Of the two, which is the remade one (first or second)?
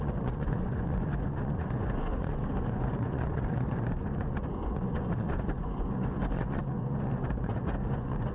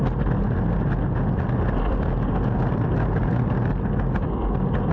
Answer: first